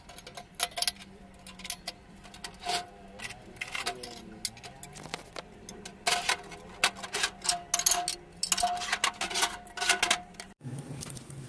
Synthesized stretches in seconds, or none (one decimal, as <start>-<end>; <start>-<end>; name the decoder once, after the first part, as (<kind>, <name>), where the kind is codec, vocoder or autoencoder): none